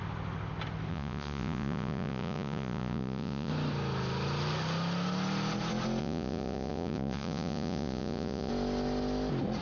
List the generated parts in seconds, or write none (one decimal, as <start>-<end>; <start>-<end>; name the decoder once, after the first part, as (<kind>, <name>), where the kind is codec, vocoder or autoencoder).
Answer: 0.9-3.5 (vocoder, Vocos); 6.0-8.5